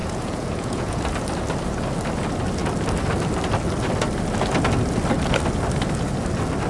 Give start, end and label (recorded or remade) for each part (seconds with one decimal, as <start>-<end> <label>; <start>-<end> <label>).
0.0-1.0 remade; 1.0-6.7 recorded